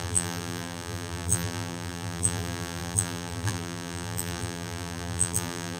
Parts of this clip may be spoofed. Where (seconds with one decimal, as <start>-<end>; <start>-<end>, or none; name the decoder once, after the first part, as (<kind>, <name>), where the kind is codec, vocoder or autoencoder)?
0.0-5.8 (vocoder, BigVGAN v2)